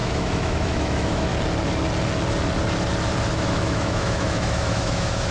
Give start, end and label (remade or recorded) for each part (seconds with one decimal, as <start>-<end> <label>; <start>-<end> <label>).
0.0-1.3 remade; 1.3-3.3 recorded; 3.3-5.3 remade